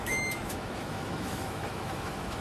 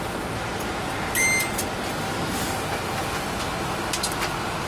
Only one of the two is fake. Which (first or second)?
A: first